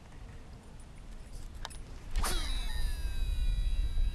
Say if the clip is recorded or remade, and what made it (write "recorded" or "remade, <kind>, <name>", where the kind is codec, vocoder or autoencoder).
recorded